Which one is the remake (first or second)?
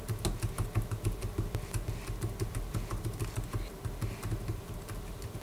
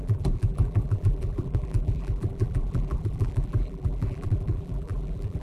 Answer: second